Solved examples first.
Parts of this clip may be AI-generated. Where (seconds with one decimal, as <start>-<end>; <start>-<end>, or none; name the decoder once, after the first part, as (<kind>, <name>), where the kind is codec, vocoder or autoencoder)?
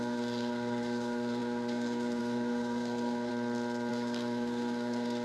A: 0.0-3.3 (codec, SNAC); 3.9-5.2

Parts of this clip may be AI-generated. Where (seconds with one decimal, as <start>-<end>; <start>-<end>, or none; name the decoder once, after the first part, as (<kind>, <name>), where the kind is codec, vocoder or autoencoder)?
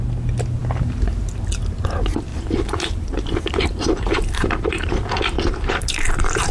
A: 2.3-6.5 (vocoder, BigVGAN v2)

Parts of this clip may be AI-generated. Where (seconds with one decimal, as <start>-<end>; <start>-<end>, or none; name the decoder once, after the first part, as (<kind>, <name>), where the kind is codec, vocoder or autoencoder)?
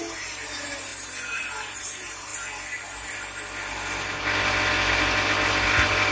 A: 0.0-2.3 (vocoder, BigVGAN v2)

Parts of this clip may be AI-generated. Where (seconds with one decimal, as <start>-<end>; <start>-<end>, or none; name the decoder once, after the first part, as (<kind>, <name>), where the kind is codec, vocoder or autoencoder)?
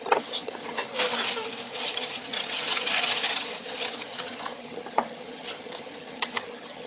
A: 0.0-0.8 (vocoder, HiFi-GAN); 1.7-6.9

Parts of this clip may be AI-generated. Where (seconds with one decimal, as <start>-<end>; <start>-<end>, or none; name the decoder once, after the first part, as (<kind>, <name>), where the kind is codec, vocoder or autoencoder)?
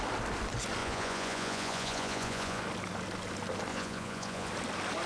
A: 0.8-2.6 (vocoder, Vocos); 3.7-4.5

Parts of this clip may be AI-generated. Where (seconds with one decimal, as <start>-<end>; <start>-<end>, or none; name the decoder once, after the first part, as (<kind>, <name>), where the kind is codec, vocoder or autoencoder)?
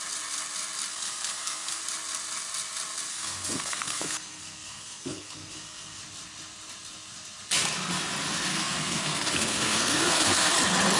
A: 0.9-1.8 (codec, SNAC); 3.1-6.0; 8.5-10.5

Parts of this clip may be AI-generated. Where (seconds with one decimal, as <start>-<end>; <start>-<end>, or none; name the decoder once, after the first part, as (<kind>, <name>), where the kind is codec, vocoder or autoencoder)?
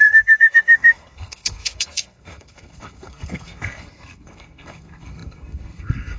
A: 0.0-6.2 (codec, SNAC)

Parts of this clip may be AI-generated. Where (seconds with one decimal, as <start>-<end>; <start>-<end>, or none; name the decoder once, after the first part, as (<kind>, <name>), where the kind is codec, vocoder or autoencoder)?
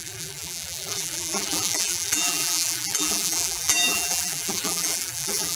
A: 0.0-5.6 (vocoder, BigVGAN v2)